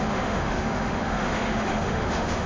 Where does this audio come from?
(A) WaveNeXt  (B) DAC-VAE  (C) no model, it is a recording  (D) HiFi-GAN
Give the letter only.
B